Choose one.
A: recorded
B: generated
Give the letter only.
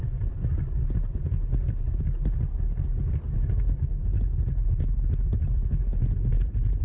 A